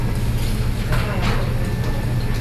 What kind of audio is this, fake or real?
real